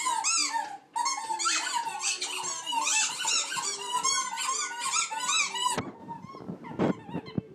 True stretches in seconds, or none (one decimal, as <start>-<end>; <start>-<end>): 0.0-1.9; 3.2-7.5